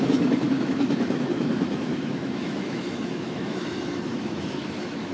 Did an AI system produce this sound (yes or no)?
yes